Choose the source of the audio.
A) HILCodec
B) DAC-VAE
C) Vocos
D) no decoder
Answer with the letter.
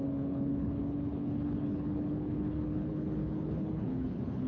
A